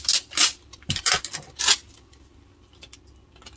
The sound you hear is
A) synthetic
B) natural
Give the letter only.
B